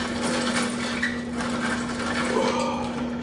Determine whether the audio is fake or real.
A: real